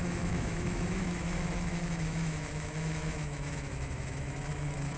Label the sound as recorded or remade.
remade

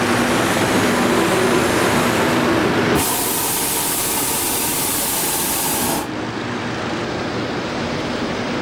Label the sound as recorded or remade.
recorded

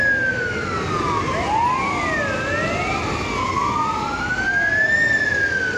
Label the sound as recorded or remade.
recorded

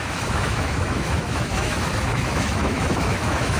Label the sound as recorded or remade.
remade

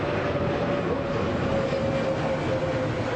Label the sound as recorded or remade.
recorded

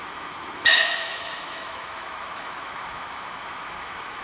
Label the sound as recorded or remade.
remade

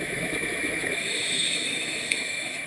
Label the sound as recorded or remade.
remade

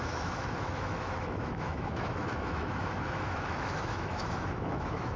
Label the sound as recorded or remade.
remade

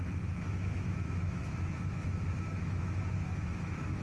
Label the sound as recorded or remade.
remade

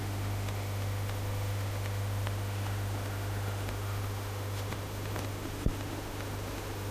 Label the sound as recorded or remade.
remade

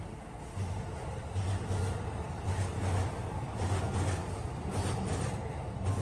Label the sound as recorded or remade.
recorded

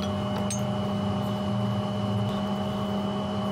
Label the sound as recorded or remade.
recorded